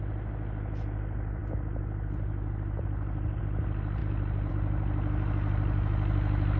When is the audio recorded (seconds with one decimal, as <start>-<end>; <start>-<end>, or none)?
0.0-6.6